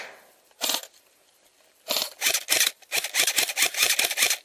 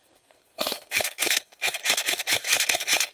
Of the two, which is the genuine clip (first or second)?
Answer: first